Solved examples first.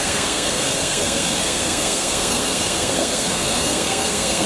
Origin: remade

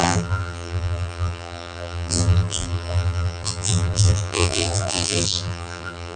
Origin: remade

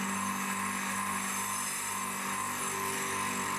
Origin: recorded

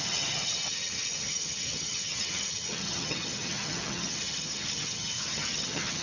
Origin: remade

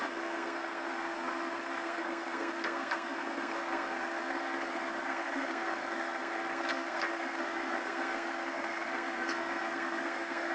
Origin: remade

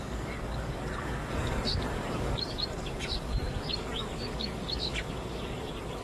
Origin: remade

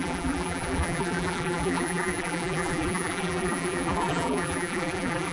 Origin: remade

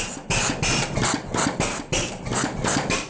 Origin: recorded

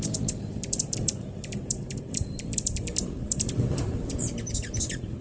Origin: remade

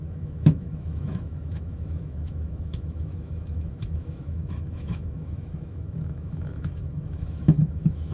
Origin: remade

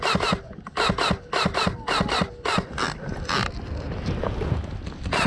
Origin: recorded